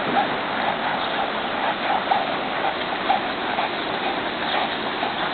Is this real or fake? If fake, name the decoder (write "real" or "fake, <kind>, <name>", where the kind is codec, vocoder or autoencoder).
real